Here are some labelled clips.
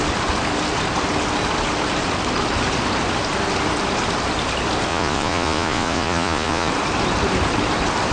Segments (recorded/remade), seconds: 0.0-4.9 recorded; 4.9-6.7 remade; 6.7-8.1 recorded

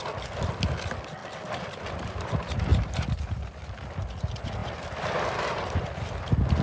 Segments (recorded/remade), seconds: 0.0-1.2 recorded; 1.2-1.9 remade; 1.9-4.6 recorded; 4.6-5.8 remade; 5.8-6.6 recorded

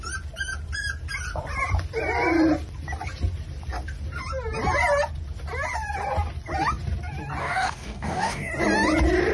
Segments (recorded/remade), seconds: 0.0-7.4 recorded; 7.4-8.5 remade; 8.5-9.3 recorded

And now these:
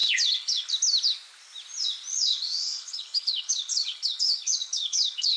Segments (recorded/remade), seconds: 0.0-0.7 remade; 0.7-2.1 recorded; 2.1-5.4 remade

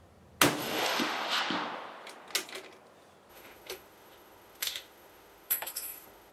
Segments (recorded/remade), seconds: 0.0-0.6 recorded; 0.6-1.4 remade; 1.4-3.3 recorded; 3.3-6.3 remade

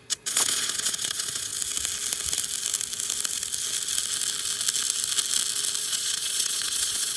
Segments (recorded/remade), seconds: 0.0-1.5 remade; 1.5-5.8 recorded; 5.8-7.2 remade